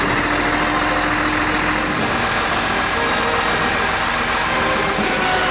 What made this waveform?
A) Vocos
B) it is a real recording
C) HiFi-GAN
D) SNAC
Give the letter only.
B